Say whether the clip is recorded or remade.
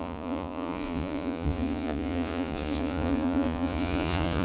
remade